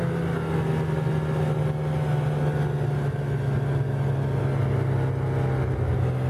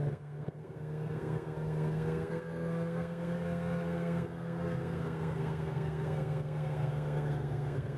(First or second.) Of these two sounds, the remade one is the second